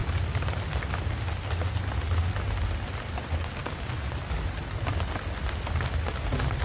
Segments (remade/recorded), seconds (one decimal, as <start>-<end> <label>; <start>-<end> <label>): 0.0-6.6 recorded